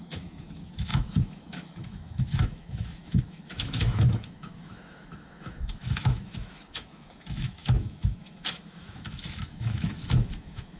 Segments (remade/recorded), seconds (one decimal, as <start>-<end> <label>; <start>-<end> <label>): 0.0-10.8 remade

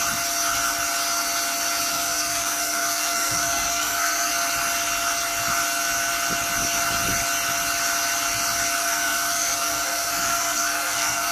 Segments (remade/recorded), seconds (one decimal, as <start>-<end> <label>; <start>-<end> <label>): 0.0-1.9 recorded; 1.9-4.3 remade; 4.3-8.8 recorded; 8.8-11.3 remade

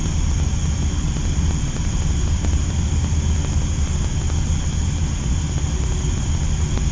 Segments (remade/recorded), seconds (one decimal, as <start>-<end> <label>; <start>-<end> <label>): 0.0-6.9 recorded